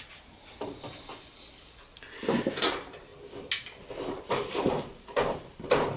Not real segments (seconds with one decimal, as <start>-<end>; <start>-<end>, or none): 0.0-1.1; 2.5-3.1; 3.9-6.0